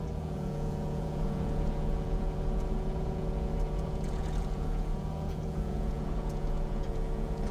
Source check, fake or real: fake